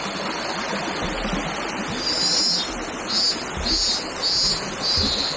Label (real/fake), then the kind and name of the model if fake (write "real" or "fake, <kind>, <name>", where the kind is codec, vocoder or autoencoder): real